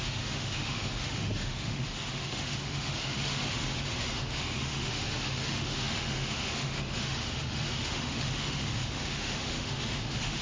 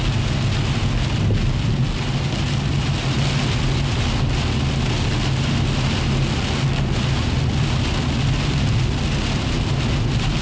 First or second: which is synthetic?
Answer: first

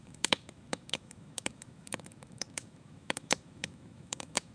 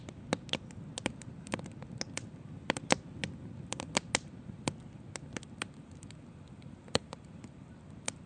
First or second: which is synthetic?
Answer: first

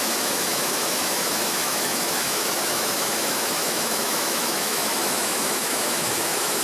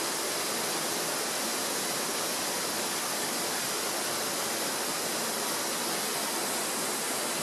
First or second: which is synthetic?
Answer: first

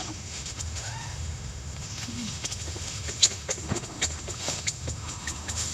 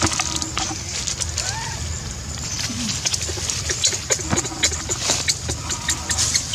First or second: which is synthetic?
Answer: first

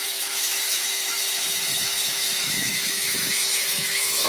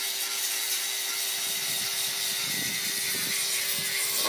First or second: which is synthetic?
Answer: first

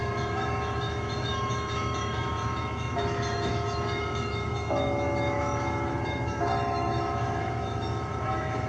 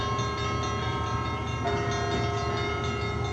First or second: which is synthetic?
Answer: first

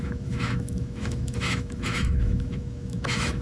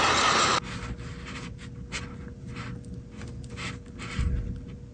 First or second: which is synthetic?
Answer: first